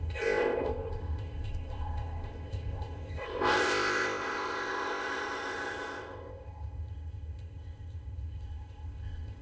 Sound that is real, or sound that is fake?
fake